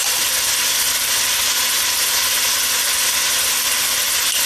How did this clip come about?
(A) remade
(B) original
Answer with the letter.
B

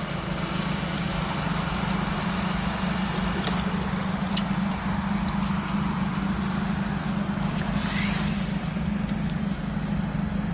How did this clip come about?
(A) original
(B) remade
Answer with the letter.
A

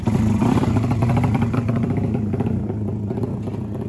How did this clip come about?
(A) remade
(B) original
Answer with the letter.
A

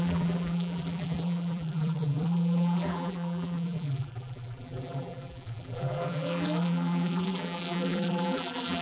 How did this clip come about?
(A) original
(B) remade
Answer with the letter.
B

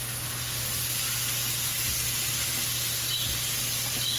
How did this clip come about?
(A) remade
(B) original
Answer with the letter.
B